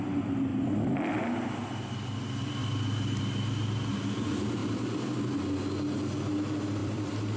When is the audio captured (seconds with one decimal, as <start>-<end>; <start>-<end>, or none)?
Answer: 0.0-0.5; 1.2-4.6; 5.2-6.8